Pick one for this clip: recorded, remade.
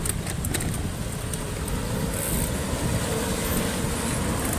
recorded